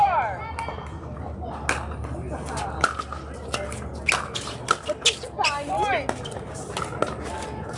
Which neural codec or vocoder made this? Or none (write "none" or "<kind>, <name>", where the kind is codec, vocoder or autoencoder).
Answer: none